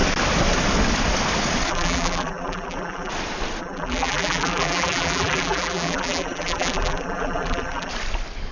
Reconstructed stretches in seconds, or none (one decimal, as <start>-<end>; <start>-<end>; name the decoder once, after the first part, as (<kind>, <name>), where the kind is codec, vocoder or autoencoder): 1.7-3.1 (vocoder, BigVGAN v2); 3.6-7.9